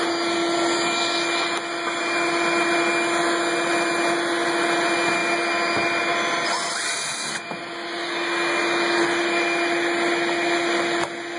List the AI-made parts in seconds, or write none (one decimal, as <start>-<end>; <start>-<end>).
none